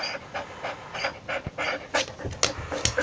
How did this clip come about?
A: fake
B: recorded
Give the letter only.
B